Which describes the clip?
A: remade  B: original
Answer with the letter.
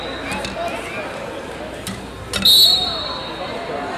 B